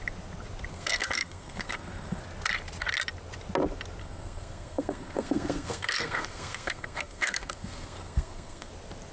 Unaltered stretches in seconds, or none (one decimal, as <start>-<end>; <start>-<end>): 0.0-0.7; 2.2-4.0; 8.7-9.1